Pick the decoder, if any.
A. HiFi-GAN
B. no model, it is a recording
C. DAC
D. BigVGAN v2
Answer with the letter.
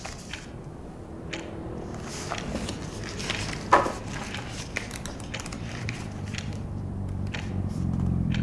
D